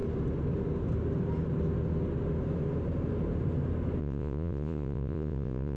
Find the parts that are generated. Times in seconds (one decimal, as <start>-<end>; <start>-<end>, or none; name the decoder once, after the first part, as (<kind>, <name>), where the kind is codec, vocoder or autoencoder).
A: 4.0-5.8 (vocoder, Vocos)

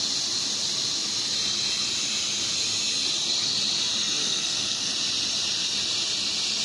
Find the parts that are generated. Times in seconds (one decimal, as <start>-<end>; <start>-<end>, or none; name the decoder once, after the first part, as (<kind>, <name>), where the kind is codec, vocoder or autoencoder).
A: 4.2-4.9 (codec, SNAC)

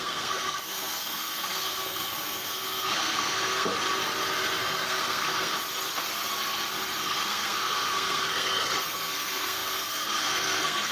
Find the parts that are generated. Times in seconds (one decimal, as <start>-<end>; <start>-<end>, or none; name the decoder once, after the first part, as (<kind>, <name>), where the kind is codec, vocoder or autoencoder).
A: 0.0-3.7 (codec, SNAC); 4.6-5.5; 7.0-10.9

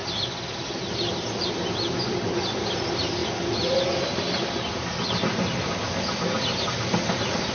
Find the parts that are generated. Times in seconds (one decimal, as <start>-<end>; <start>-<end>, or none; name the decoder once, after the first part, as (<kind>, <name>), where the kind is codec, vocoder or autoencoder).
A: none

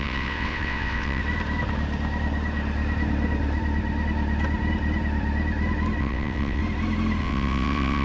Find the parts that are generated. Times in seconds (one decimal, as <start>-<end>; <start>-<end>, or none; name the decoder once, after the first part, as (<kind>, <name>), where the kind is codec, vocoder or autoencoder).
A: 0.0-1.2 (vocoder, WaveNeXt); 6.0-6.6; 7.2-8.0

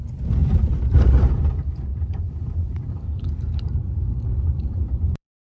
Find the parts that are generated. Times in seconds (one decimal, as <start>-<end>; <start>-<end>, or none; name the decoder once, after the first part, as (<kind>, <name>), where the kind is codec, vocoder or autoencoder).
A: 0.4-1.5 (vocoder, BigVGAN v2); 1.9-5.6

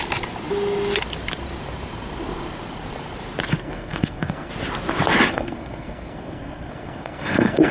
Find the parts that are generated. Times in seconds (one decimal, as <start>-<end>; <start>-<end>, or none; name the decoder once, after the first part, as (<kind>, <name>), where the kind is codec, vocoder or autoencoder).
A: 3.5-4.5 (codec, SNAC); 5.3-7.7

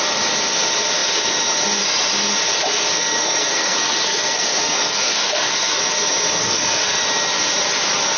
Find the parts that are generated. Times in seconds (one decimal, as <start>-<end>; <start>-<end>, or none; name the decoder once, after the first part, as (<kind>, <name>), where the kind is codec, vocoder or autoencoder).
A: 3.0-5.8 (codec, SNAC); 6.4-7.0